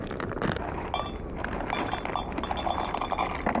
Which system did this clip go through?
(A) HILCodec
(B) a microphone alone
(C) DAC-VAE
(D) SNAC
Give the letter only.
B